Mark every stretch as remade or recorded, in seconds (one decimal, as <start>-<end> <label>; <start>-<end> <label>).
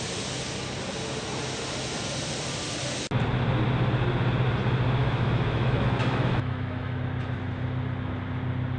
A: 0.0-5.0 recorded; 5.0-7.0 remade; 7.0-8.8 recorded